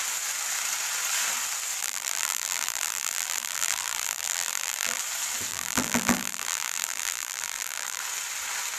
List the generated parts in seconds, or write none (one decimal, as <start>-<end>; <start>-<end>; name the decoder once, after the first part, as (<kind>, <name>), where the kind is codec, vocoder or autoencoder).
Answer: 1.8-5.0 (vocoder, BigVGAN v2); 5.5-8.0